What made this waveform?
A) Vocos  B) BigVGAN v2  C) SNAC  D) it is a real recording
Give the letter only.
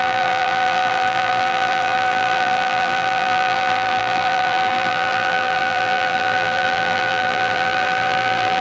B